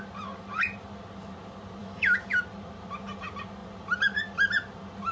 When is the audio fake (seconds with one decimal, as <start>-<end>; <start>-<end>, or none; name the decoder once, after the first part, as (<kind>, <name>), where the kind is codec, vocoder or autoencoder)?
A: 1.8-2.4 (autoencoder, DAC-VAE)